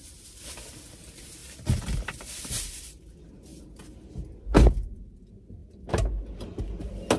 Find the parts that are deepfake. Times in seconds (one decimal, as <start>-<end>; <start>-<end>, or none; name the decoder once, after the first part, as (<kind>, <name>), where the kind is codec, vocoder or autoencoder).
none